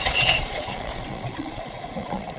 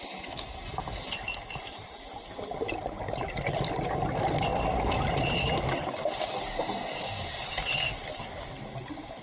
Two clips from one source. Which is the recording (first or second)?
second